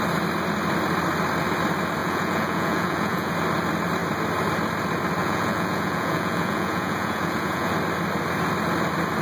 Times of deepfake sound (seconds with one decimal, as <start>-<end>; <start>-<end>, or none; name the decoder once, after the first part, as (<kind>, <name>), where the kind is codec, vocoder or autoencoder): 2.0-3.3 (vocoder, Vocos); 5.2-7.7